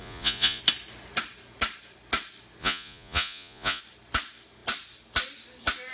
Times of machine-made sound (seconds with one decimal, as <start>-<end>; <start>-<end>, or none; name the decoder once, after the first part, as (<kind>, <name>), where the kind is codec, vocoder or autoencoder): 0.0-0.6 (vocoder, Vocos); 2.6-3.8